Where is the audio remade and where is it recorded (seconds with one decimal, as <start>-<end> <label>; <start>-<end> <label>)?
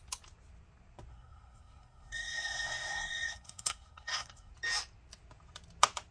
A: 0.0-1.1 recorded; 1.1-4.5 remade; 4.5-6.1 recorded